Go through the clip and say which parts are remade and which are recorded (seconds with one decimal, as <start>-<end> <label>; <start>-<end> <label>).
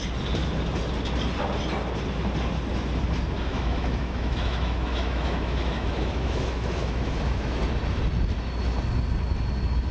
0.0-3.5 recorded; 3.5-7.6 remade; 7.6-9.9 recorded